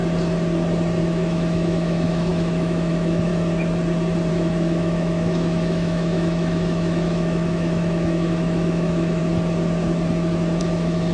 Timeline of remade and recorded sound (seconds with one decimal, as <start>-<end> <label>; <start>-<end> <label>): 0.0-1.0 recorded; 1.0-3.3 remade; 3.3-4.3 recorded; 4.3-9.2 remade; 9.2-10.6 recorded; 10.6-11.1 remade